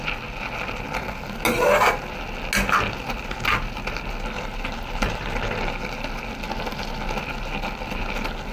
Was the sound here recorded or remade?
recorded